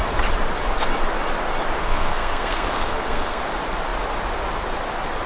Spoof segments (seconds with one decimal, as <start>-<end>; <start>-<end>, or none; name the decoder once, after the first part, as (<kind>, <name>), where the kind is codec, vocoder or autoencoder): 1.8-3.4 (codec, SNAC)